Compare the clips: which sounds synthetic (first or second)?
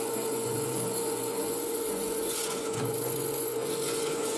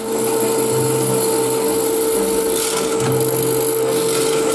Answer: first